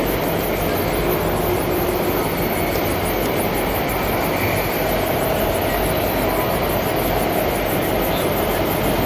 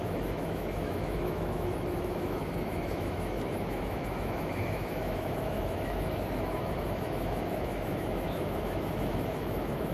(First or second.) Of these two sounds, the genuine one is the first